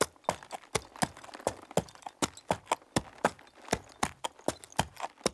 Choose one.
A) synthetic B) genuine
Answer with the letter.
B